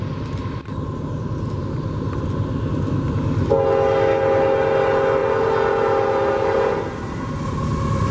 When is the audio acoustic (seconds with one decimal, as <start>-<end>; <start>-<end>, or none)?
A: 0.0-8.1